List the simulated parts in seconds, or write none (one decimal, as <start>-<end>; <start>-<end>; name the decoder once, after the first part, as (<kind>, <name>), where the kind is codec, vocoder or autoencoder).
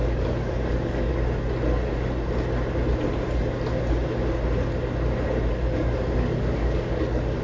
0.0-1.1 (codec, DAC); 5.5-7.4